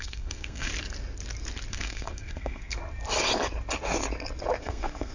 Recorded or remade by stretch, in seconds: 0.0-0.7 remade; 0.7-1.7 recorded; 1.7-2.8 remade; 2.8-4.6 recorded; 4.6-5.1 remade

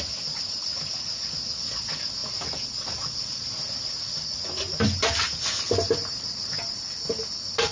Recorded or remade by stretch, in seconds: 0.0-7.7 recorded

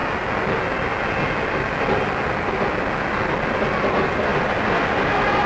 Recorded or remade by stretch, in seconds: 0.0-5.5 recorded

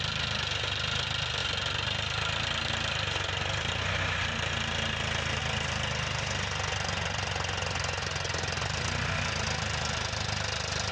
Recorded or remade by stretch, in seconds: 0.0-10.9 recorded